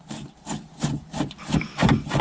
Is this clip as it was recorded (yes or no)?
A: yes